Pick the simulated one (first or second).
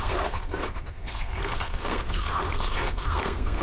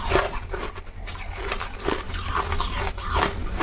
first